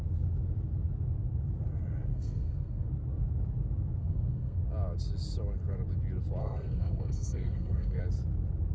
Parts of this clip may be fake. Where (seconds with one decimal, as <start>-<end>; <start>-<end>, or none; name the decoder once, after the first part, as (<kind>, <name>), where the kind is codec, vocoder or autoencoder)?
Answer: 2.1-2.9 (codec, SNAC); 4.0-4.6; 6.4-8.0